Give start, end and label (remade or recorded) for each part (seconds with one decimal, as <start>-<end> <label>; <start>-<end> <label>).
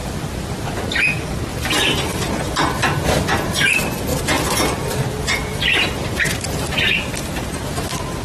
0.0-1.5 recorded; 1.5-2.3 remade; 2.3-6.2 recorded; 6.2-7.6 remade; 7.6-8.2 recorded